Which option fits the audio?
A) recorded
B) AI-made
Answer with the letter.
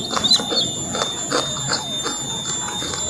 A